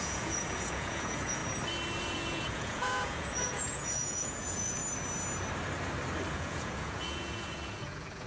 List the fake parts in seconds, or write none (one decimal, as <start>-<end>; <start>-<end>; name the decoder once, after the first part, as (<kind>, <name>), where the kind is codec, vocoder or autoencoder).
0.0-1.4 (vocoder, Vocos); 2.0-4.8; 6.3-8.3